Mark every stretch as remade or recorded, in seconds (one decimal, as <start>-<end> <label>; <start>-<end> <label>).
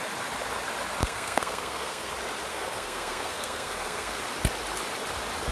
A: 0.0-1.0 recorded; 1.0-2.1 remade; 2.1-2.5 recorded; 2.5-4.2 remade; 4.2-5.5 recorded